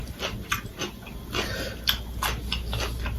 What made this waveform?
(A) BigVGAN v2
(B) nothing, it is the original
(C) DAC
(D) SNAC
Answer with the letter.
B